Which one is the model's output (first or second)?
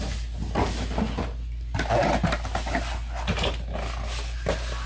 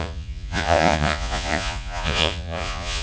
second